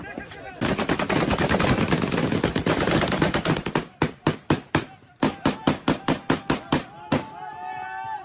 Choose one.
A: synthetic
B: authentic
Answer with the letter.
B